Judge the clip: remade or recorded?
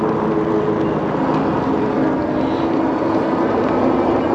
recorded